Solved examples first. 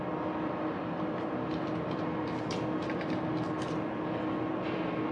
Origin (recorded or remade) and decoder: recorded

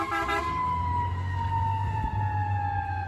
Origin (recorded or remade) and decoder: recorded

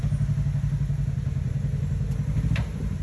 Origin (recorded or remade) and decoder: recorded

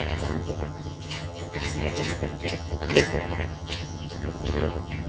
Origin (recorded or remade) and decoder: remade, vocoder, HiFi-GAN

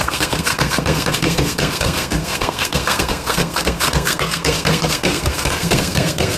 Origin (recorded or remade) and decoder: remade, codec, SNAC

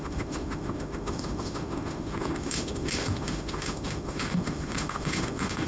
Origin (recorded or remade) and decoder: remade, autoencoder, DAC-VAE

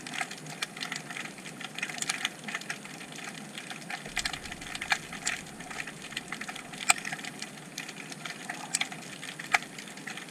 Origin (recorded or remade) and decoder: recorded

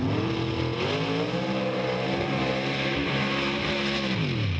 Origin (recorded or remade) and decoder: recorded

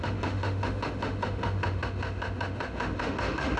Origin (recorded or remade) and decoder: remade, autoencoder, DAC-VAE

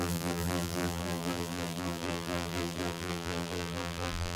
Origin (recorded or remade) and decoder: remade, vocoder, BigVGAN v2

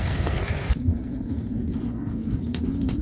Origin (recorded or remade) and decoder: remade, codec, SNAC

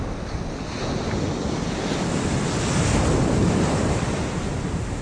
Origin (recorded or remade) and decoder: recorded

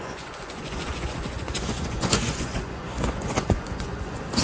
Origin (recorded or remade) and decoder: remade, vocoder, Vocos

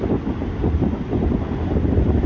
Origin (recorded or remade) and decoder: remade, vocoder, BigVGAN v2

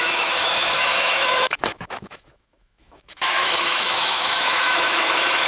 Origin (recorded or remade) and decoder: remade, autoencoder, DAC-VAE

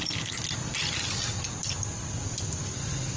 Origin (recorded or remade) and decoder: recorded